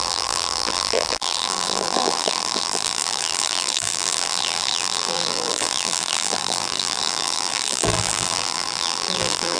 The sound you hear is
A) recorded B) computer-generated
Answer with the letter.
B